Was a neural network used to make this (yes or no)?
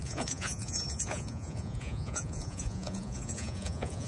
yes